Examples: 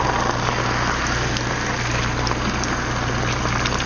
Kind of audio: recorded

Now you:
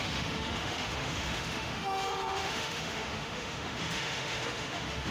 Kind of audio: remade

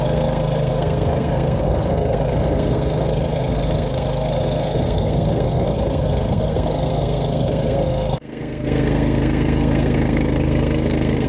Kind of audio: remade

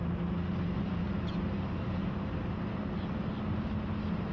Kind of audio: recorded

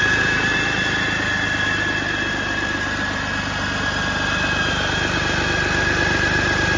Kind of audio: recorded